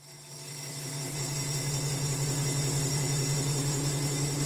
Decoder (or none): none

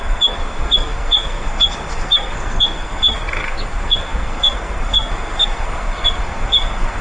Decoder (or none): codec, SNAC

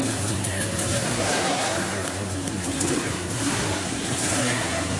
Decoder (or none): codec, SNAC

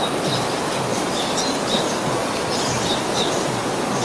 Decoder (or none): none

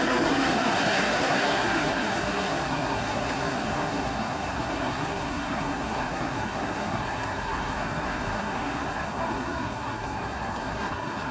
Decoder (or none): codec, SNAC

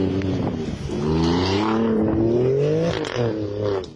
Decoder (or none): none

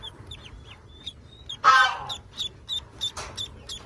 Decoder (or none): none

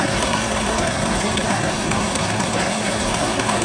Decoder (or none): codec, SNAC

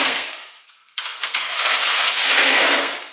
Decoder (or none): codec, SNAC